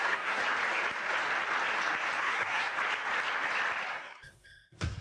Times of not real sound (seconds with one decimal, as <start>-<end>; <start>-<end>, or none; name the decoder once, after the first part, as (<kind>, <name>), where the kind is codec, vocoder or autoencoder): 0.0-0.4 (codec, SNAC); 2.2-2.7; 3.9-5.0